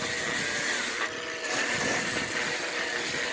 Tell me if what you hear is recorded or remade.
recorded